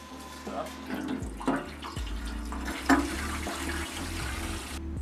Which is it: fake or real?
real